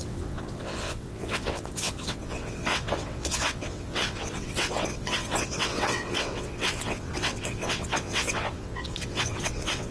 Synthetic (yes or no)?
yes